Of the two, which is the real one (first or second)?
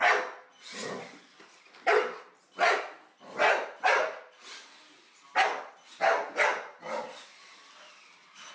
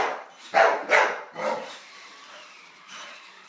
first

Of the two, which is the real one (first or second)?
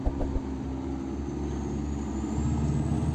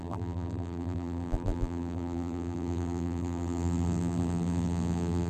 first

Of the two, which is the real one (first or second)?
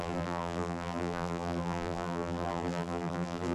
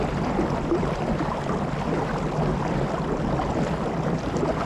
second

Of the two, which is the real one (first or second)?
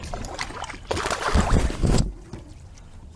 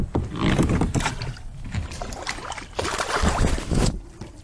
first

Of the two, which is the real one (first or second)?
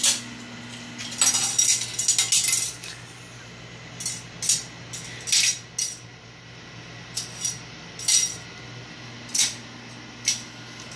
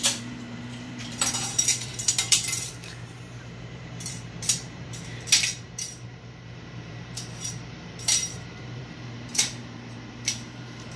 first